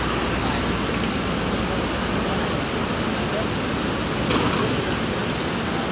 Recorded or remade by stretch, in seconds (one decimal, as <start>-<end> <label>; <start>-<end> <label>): 0.0-5.9 recorded

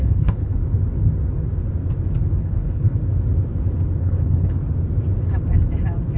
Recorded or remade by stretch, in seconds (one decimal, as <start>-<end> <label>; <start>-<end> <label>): 0.0-0.6 remade; 0.6-2.4 recorded; 2.4-3.0 remade; 3.0-4.0 recorded; 4.0-4.6 remade; 4.6-6.2 recorded